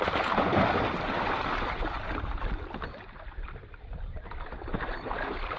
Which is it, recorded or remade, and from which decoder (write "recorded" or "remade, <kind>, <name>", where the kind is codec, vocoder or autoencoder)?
remade, vocoder, BigVGAN v2